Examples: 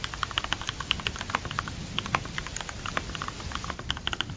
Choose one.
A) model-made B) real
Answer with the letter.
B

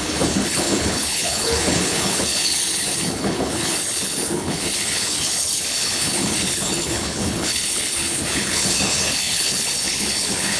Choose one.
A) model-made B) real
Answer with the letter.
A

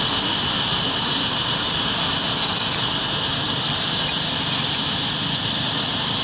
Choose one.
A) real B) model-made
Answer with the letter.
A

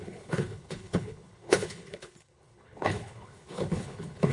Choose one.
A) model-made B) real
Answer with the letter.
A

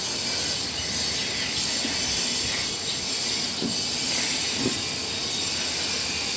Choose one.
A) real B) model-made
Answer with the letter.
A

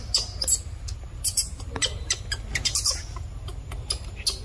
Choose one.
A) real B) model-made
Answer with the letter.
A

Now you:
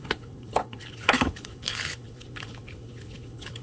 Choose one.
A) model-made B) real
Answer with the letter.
A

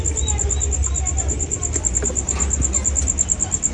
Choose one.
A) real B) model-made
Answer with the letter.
A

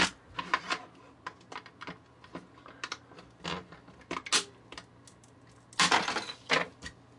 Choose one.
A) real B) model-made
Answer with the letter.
A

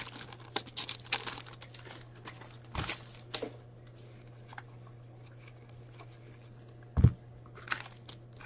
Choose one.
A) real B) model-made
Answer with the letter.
A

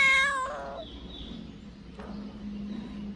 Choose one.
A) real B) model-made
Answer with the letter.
A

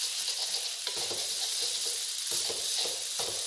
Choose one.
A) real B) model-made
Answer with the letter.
A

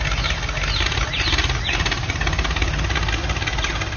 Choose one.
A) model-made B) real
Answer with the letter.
B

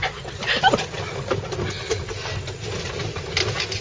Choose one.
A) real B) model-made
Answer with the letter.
A